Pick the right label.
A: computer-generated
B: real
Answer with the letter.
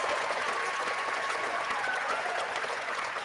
A